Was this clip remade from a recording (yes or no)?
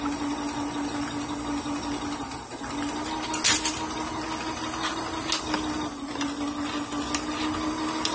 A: no